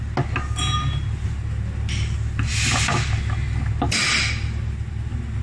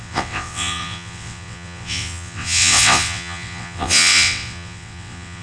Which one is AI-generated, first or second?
second